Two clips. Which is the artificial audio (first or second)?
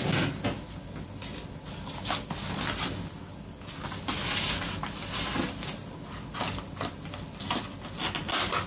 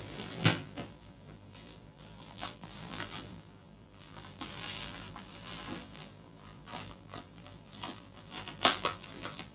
second